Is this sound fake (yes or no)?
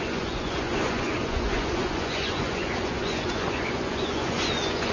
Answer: yes